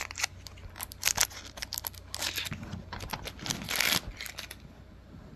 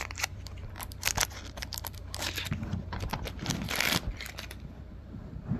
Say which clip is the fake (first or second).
second